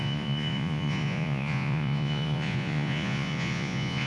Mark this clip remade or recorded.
remade